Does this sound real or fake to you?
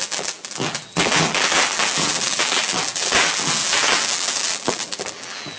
fake